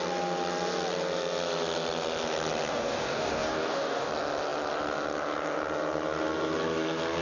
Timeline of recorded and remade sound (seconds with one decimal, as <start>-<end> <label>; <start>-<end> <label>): 0.0-2.7 recorded; 2.7-4.1 remade; 4.1-7.2 recorded